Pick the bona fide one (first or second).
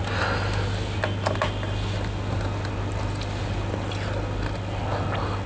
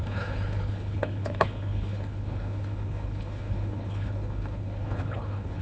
first